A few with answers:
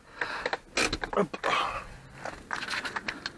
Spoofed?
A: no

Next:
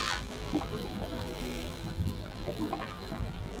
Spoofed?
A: yes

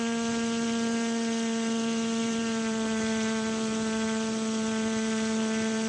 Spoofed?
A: yes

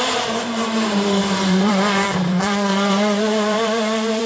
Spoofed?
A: yes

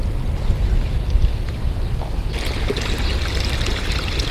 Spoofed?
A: no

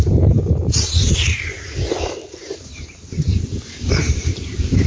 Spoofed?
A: yes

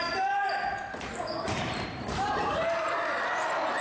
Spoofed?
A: yes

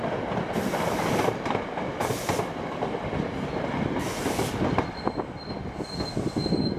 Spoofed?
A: no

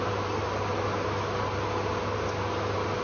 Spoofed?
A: no